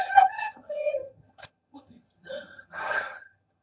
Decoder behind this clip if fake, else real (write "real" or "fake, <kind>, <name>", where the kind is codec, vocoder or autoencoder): fake, vocoder, HiFi-GAN